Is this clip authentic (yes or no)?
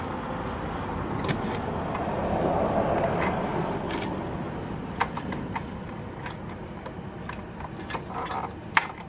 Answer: yes